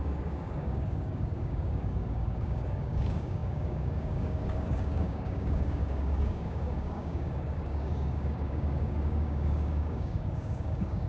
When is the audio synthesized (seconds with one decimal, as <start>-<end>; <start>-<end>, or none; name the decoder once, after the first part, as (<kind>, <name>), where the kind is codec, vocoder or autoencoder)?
0.0-11.1 (codec, DAC)

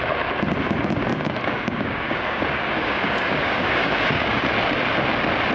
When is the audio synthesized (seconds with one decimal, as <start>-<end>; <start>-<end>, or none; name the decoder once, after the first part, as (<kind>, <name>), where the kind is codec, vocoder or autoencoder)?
1.1-4.4 (codec, DAC)